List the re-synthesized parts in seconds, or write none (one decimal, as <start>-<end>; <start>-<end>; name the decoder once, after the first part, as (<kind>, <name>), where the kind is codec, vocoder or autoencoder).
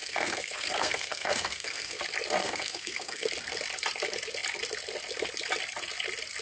0.0-2.0 (codec, SNAC); 2.4-3.3